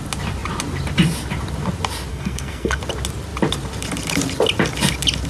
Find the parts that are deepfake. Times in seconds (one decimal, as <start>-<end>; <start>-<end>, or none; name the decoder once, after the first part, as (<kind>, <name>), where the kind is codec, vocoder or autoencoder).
2.1-2.8 (codec, SNAC)